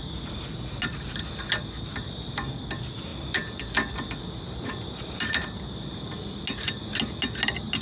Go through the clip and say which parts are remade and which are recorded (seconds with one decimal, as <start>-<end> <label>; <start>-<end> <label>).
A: 0.0-1.9 recorded; 1.9-2.6 remade; 2.6-7.8 recorded